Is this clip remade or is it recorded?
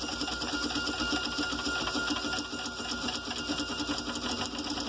recorded